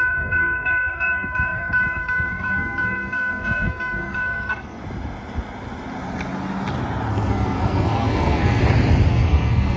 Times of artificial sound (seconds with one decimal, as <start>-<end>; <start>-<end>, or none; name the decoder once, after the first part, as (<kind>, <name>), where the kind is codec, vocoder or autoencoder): 0.0-4.8 (codec, SNAC); 7.1-8.6; 9.1-9.8